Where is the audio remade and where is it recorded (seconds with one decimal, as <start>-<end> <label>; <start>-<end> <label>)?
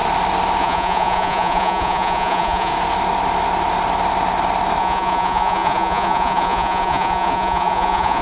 0.0-0.6 recorded; 0.6-2.7 remade; 2.7-4.8 recorded; 4.8-8.2 remade